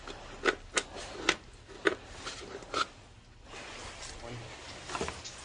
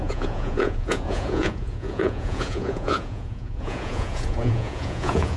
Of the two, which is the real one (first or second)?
first